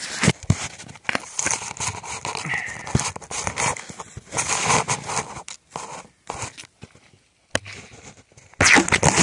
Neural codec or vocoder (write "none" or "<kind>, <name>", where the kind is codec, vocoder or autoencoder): none